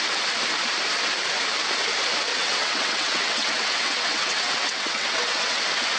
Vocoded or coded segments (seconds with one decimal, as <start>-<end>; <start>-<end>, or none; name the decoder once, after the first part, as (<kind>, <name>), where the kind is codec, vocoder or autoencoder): 2.3-5.6 (vocoder, WaveNeXt)